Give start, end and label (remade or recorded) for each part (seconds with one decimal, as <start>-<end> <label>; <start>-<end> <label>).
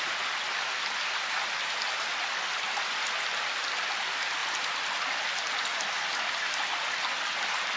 0.0-7.8 recorded